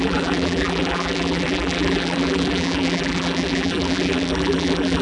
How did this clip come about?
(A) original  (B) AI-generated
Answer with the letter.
B